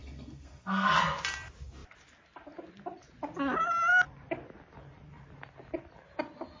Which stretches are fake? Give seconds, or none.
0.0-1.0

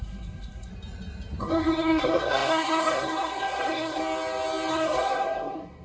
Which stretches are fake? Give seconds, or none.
0.0-0.7; 1.4-4.0; 4.7-5.8

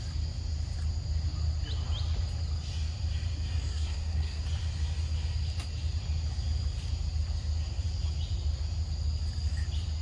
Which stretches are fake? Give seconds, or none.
3.7-4.4

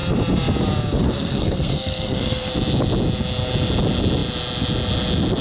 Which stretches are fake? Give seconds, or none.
1.0-2.5

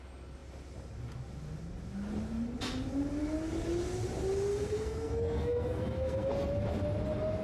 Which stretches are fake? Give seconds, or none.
4.5-6.3

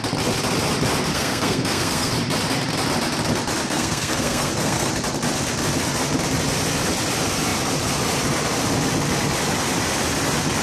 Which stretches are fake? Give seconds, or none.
1.1-2.1; 3.6-4.9

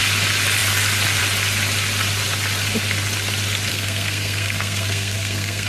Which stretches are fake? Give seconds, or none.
3.7-5.7

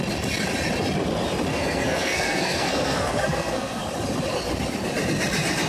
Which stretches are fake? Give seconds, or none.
1.5-3.8